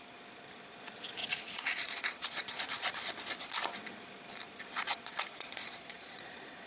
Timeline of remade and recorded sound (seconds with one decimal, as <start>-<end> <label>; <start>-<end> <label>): 0.0-1.2 recorded; 1.2-3.1 remade; 3.1-4.8 recorded; 4.8-6.7 remade